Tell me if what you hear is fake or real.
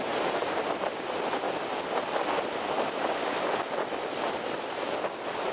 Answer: real